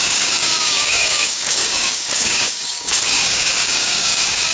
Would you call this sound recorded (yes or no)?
no